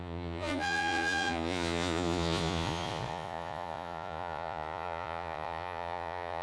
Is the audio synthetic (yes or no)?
yes